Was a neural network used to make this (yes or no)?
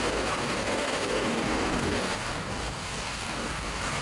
yes